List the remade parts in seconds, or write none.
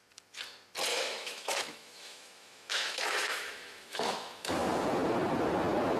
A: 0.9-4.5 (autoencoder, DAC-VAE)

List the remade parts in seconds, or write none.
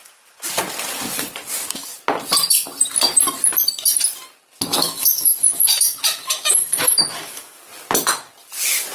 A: 4.7-7.6 (autoencoder, DAC-VAE)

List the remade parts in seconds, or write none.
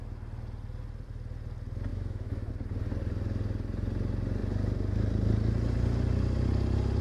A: 1.9-2.5 (autoencoder, DAC-VAE)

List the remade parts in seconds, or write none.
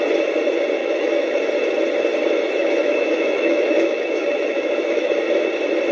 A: 0.8-1.5 (autoencoder, DAC-VAE); 2.6-5.1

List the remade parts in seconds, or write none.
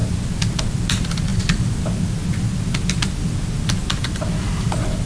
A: none